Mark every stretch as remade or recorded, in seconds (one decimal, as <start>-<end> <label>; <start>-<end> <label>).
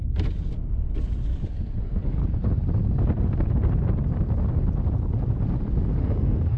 0.0-1.8 recorded; 1.8-2.2 remade; 2.2-6.0 recorded; 6.0-6.6 remade